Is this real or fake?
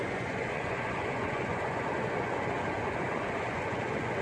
fake